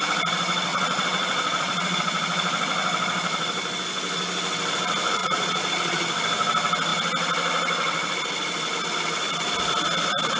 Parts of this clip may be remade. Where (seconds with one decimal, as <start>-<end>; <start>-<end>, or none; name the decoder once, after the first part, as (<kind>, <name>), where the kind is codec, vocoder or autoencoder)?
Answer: 0.7-2.0 (vocoder, Vocos); 5.2-6.1